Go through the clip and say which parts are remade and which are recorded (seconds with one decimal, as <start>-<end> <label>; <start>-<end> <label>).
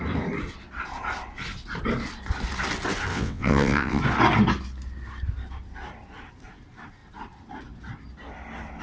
0.0-3.1 recorded; 3.1-4.0 remade; 4.0-8.8 recorded